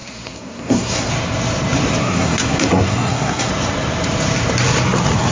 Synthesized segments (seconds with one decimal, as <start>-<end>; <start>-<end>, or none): 0.0-1.1; 2.0-3.5